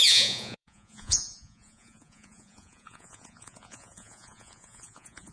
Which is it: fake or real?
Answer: fake